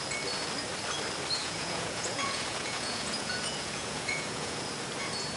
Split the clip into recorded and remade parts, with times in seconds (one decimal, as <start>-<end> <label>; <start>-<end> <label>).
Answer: 0.0-1.4 recorded; 1.4-4.6 remade; 4.6-5.4 recorded